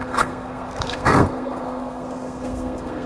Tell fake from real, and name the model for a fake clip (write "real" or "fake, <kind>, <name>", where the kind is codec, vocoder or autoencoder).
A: fake, codec, SNAC